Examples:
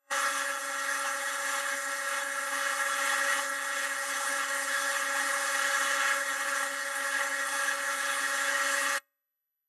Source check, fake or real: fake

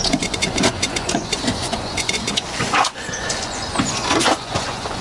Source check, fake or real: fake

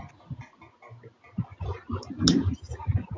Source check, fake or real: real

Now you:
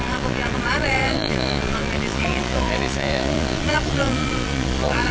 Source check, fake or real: fake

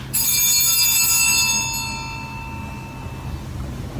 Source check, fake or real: real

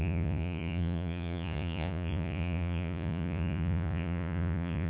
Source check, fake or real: fake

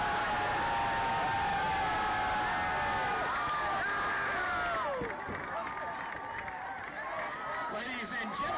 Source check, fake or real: real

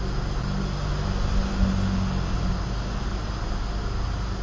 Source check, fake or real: real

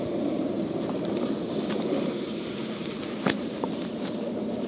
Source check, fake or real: fake